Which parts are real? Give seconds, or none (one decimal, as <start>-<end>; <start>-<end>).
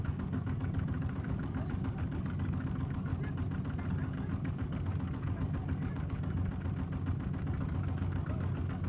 3.1-3.9; 6.5-7.4